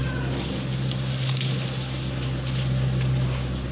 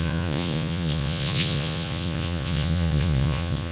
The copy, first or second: second